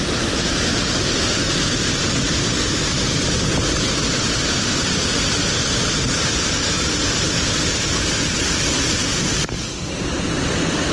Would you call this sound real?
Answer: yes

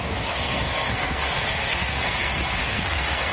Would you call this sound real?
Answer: no